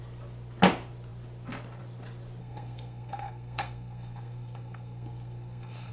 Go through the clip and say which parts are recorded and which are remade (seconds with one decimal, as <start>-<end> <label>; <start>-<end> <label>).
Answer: 0.0-2.4 recorded; 2.4-5.9 remade